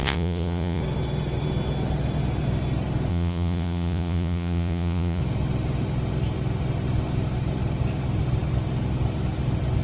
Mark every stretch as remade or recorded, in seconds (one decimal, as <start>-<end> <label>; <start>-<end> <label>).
0.0-0.8 remade; 0.8-3.1 recorded; 3.1-5.2 remade; 5.2-9.8 recorded